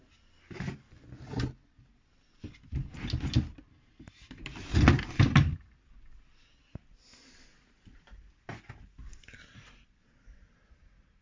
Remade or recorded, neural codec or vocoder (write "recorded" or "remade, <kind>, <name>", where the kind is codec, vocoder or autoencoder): recorded